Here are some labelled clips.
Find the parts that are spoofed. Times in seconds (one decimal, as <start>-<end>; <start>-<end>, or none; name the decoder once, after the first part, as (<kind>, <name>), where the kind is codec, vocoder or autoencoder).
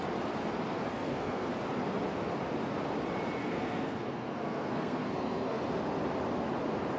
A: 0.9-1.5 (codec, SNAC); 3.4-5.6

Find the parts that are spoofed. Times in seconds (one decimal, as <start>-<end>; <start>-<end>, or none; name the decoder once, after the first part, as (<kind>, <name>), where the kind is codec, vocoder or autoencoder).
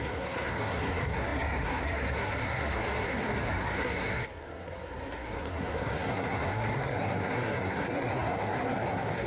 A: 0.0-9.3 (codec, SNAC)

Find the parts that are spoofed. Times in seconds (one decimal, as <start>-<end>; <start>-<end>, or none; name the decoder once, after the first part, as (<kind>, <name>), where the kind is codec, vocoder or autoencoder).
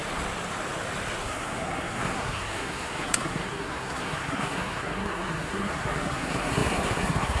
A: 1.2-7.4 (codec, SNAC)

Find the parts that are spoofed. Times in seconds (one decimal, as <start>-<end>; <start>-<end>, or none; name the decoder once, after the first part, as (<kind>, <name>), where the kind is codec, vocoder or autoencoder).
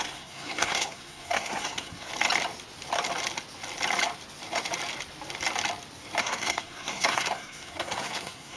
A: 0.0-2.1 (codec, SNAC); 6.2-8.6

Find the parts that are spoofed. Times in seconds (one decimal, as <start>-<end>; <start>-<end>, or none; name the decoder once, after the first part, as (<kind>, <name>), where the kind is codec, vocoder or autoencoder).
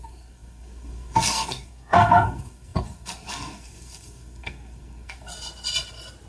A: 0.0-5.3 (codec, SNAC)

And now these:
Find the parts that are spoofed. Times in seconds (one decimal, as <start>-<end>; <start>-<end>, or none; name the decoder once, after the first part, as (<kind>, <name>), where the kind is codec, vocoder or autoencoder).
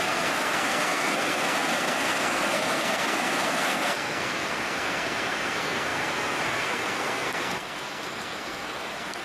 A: 0.0-9.2 (codec, SNAC)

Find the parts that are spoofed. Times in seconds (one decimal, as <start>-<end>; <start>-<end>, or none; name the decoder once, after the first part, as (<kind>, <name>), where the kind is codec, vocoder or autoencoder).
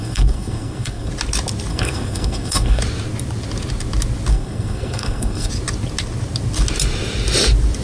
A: 0.0-1.1 (codec, SNAC); 1.7-2.8; 4.3-5.5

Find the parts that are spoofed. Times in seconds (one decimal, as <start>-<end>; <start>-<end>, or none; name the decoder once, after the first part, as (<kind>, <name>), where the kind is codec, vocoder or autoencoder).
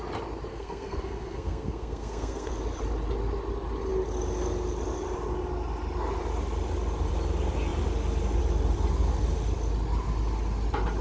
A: 0.5-2.5 (codec, SNAC)